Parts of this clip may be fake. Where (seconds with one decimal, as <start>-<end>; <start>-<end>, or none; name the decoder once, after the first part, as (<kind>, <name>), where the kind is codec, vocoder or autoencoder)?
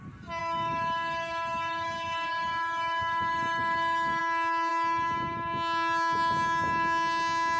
0.4-4.2 (autoencoder, DAC-VAE)